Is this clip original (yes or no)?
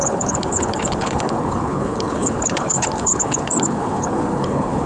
no